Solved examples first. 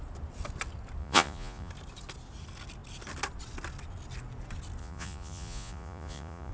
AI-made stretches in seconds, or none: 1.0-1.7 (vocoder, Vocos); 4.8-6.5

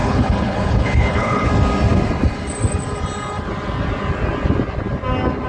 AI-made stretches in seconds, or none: 0.0-1.5 (codec, HILCodec)